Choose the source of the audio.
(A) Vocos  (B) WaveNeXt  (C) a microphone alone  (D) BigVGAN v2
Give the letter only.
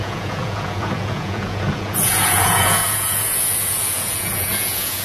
A